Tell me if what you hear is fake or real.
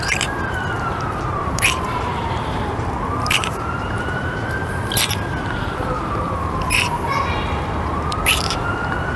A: fake